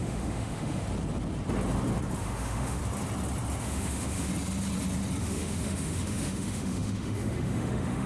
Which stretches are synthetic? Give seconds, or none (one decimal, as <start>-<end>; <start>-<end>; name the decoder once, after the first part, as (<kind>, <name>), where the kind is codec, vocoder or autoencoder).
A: 0.0-0.8 (autoencoder, DAC-VAE); 2.2-2.8; 3.6-4.3; 5.2-8.1